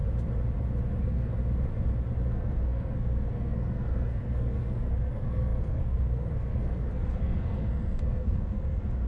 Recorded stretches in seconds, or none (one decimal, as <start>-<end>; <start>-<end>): 0.0-1.0; 1.4-2.3